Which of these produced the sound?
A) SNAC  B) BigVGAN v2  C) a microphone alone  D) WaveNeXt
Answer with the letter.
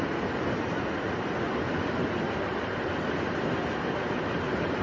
C